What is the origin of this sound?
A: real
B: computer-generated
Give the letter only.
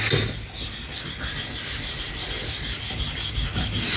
A